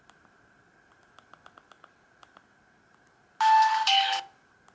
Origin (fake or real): real